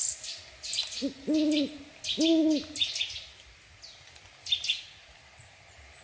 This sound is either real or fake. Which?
real